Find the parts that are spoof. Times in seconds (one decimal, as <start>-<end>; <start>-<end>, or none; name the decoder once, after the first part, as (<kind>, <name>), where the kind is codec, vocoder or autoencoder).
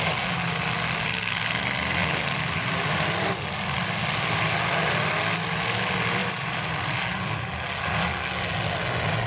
2.0-3.4 (vocoder, BigVGAN v2); 6.2-7.0